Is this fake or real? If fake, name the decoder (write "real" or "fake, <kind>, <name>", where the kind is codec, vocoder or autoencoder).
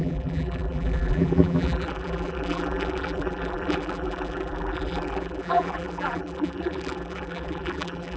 fake, vocoder, BigVGAN v2